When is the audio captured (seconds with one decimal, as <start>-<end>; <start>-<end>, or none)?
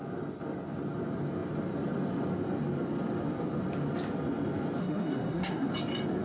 0.0-4.8; 5.7-6.2